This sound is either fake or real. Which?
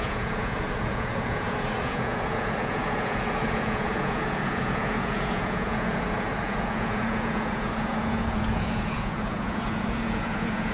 fake